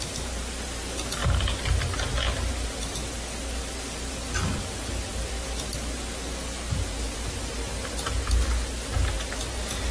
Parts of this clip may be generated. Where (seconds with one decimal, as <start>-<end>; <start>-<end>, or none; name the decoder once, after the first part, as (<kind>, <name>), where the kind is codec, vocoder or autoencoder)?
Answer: none